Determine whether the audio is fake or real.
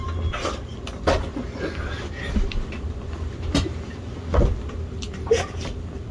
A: real